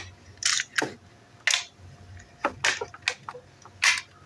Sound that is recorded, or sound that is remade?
recorded